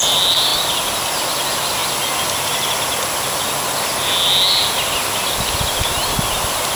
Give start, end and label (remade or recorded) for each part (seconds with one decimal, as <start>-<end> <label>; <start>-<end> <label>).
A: 0.0-6.8 recorded